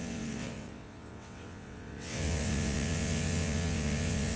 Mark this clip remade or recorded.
remade